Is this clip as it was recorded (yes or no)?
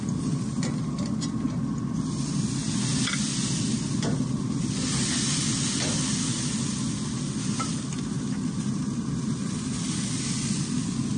yes